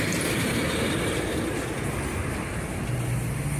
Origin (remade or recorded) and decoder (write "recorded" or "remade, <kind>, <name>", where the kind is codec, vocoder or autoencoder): recorded